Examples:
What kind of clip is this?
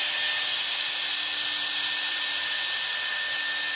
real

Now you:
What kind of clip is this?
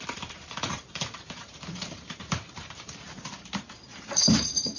fake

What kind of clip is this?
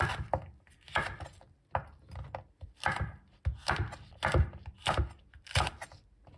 real